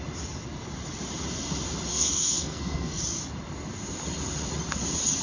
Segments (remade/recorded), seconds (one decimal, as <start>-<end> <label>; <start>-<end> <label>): 0.0-1.9 recorded; 1.9-3.0 remade; 3.0-5.2 recorded